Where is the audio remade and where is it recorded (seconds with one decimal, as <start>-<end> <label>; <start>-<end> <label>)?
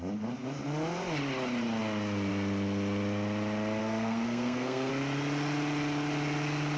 0.0-3.8 recorded; 3.8-4.9 remade; 4.9-6.8 recorded